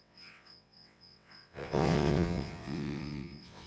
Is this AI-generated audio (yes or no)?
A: yes